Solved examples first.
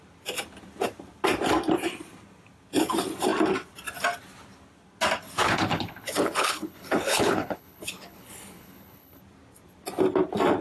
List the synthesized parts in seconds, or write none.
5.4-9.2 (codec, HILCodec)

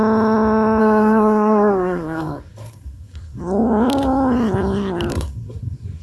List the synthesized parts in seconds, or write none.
0.8-3.4 (codec, SNAC); 5.1-6.0

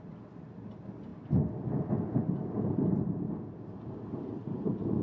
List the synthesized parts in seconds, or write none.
none

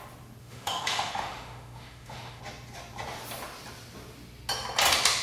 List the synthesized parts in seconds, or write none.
0.4-2.4 (autoencoder, DAC-VAE)

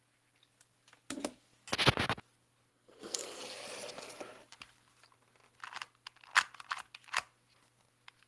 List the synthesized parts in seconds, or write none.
2.7-3.4 (codec, SNAC)

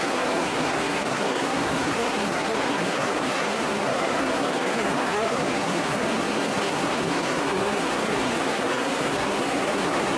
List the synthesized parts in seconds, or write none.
0.0-10.2 (codec, SNAC)